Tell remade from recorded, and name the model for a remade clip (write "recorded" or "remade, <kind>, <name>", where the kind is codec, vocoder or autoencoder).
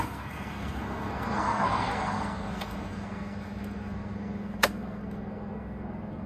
remade, codec, SNAC